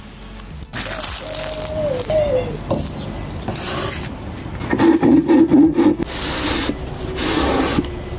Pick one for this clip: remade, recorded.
recorded